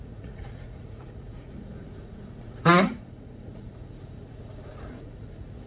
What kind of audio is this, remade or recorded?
remade